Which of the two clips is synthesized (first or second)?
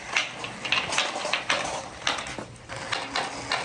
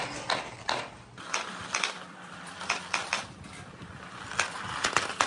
second